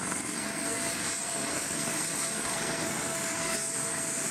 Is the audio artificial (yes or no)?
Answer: yes